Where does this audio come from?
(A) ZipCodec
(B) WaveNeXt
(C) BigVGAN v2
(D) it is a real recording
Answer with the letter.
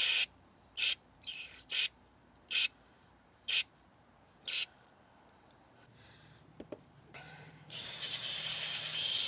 C